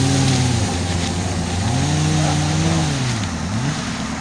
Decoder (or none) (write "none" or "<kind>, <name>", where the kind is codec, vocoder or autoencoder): none